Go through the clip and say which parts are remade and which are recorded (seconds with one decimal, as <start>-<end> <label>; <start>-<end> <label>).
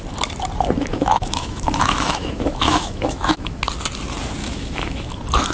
0.0-0.9 recorded; 0.9-3.6 remade; 3.6-4.4 recorded; 4.4-5.1 remade; 5.1-5.5 recorded